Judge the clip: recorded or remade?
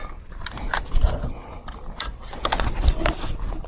recorded